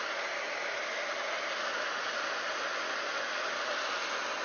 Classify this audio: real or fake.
real